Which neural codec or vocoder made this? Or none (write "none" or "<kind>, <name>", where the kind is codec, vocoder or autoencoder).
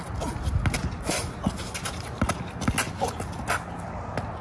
none